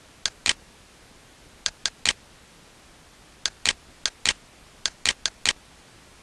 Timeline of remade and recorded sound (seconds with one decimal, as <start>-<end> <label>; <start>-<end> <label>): 0.0-6.2 recorded